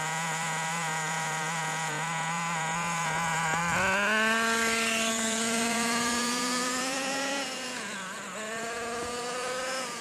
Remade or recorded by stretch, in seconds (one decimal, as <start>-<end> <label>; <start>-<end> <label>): 0.0-3.6 remade; 3.6-5.1 recorded; 5.1-10.0 remade